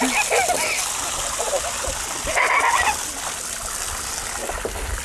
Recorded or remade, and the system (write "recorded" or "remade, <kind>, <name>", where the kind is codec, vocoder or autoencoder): recorded